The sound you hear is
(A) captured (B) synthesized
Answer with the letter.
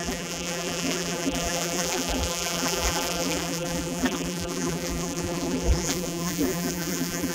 B